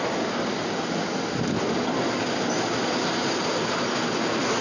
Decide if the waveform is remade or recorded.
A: recorded